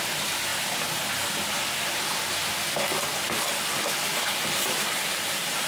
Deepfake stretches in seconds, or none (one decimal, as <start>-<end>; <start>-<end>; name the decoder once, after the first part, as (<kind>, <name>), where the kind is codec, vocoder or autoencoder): 0.0-0.5 (vocoder, BigVGAN v2); 3.9-5.7